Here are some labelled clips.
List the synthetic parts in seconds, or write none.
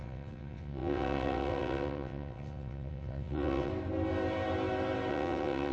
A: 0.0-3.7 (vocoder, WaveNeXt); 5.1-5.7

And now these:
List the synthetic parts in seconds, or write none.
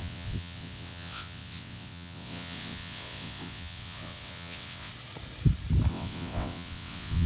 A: 0.0-4.9 (vocoder, WaveNeXt); 5.9-7.3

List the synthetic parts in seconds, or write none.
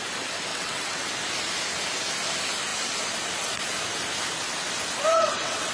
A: 0.5-1.1 (vocoder, WaveNeXt); 5.1-5.7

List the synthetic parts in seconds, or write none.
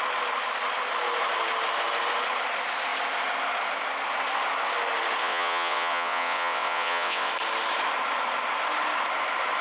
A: 5.2-7.3 (vocoder, WaveNeXt)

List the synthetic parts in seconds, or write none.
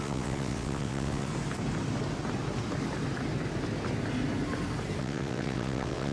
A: 0.0-1.3 (vocoder, WaveNeXt); 5.0-6.1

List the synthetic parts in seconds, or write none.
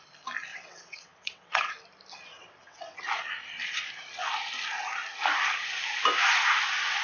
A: 0.5-1.6 (vocoder, WaveNeXt); 2.3-3.0